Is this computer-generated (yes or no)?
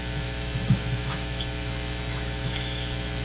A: yes